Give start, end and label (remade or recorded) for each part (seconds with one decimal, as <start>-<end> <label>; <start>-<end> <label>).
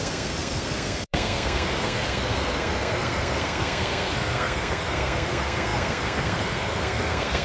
0.0-7.4 remade